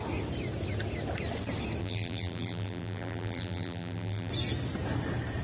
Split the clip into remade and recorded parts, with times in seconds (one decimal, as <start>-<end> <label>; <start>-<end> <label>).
0.0-1.8 recorded; 1.8-4.3 remade; 4.3-5.4 recorded